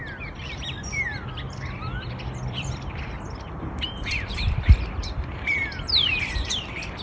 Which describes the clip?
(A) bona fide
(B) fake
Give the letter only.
B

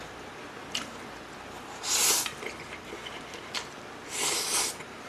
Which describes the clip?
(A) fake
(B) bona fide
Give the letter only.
B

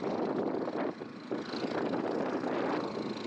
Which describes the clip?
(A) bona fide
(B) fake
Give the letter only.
A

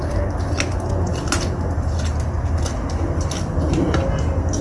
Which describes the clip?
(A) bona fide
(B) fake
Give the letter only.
A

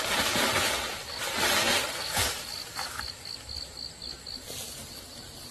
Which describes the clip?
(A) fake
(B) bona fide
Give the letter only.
B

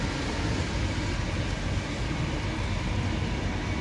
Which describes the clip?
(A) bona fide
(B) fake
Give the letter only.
A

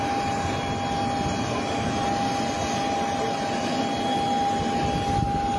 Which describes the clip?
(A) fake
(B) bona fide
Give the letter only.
B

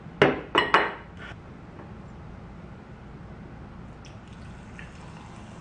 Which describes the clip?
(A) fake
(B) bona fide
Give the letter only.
B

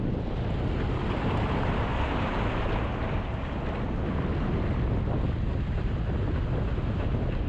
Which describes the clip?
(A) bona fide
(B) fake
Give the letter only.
A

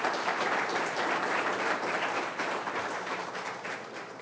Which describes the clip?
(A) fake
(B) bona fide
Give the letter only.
A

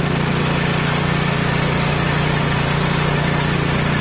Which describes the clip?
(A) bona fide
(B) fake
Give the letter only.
A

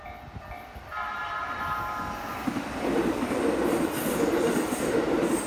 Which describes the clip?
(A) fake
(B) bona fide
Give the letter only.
B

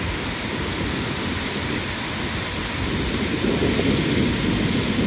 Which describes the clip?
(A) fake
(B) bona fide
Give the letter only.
B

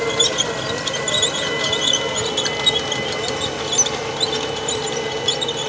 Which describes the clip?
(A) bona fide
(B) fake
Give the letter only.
A